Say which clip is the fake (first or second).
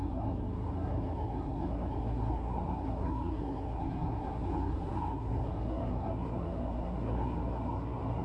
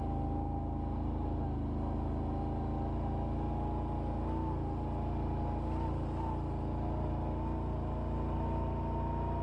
first